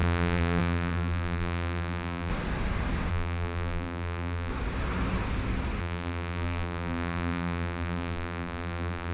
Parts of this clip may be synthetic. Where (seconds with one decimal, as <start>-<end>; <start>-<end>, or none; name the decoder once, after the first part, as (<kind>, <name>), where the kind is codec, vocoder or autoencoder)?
0.0-2.3 (vocoder, BigVGAN v2); 3.1-4.5; 5.8-9.1